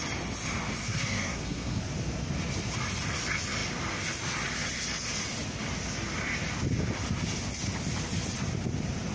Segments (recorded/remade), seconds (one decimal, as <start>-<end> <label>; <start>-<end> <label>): 0.0-0.8 recorded; 0.8-1.8 remade; 1.8-9.1 recorded